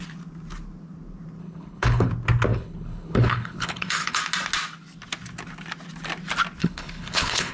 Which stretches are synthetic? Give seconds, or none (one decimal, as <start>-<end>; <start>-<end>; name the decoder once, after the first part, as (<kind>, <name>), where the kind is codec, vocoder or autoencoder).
1.4-2.1 (codec, HILCodec); 2.5-4.2; 6.6-7.5